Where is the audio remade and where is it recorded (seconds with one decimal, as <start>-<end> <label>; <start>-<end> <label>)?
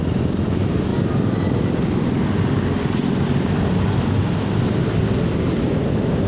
0.0-6.3 recorded